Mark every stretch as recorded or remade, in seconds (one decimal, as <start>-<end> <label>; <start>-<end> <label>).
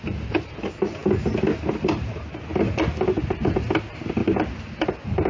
0.0-5.3 recorded